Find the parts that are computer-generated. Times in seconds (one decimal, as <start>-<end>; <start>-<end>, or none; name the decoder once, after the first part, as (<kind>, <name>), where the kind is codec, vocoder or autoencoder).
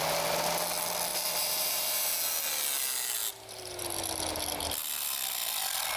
1.1-2.1 (vocoder, BigVGAN v2)